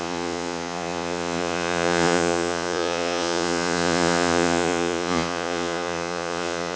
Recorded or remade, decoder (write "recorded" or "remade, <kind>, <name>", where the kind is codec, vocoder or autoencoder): remade, vocoder, Vocos